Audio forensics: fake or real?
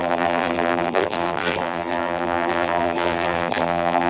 fake